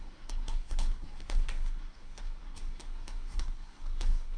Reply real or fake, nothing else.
fake